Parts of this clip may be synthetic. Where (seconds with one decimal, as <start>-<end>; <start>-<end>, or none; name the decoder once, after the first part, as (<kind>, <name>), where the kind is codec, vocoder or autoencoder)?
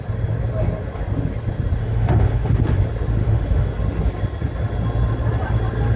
1.8-2.5 (autoencoder, DAC-VAE); 3.2-3.7